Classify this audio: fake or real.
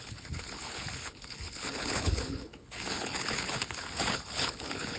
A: fake